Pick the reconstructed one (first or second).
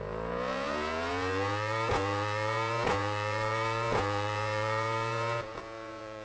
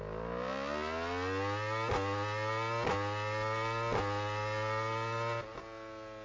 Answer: first